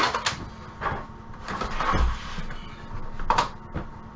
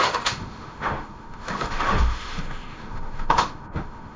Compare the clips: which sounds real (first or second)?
first